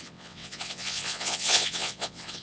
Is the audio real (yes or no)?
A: no